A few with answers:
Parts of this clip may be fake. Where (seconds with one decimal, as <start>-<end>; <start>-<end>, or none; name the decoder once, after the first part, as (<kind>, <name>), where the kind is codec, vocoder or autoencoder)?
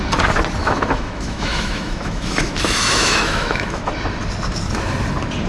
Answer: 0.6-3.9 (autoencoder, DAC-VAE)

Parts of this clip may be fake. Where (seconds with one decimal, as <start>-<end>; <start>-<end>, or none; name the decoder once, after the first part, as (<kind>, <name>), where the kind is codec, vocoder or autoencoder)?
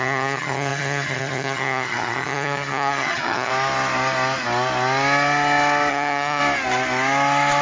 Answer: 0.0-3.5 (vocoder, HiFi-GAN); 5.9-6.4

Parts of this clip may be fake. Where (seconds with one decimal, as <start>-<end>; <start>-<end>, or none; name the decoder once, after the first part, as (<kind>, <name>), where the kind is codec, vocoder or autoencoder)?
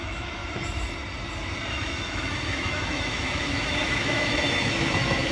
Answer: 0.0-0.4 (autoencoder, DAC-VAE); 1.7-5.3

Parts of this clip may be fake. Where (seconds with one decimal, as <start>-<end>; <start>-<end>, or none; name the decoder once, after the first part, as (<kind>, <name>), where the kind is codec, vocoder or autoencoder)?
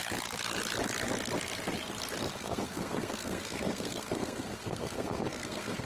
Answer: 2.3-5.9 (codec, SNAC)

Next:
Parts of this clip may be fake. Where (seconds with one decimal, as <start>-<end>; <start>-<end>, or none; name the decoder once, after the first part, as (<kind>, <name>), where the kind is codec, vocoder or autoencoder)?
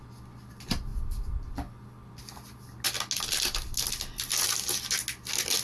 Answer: none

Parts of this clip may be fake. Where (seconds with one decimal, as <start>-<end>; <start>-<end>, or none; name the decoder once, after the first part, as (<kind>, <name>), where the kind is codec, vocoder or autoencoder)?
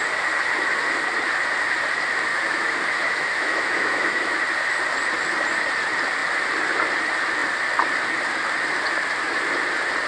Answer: 2.3-4.4 (autoencoder, DAC-VAE)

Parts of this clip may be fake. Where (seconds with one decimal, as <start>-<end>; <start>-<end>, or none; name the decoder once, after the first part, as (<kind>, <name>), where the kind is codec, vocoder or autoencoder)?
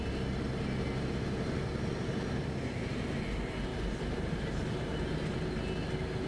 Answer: 3.7-5.3 (vocoder, BigVGAN v2)